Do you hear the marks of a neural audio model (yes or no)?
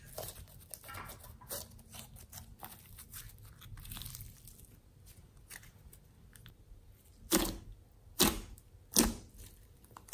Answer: no